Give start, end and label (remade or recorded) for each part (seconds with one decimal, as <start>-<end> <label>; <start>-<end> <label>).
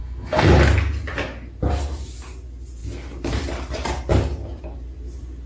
0.0-0.5 remade; 0.5-5.5 recorded